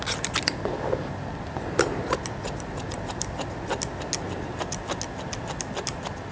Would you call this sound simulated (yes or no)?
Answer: no